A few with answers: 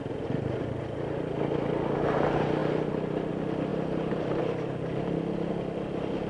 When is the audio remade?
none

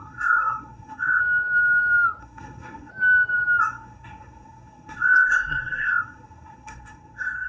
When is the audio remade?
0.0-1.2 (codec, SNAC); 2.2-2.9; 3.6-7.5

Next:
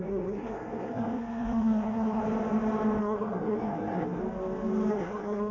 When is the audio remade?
0.0-2.2 (codec, SNAC); 3.0-4.2; 4.9-5.5

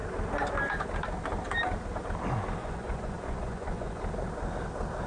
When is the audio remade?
2.6-4.0 (vocoder, Vocos)

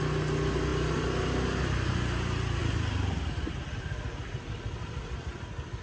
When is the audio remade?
none

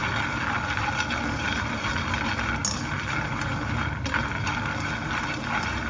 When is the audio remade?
none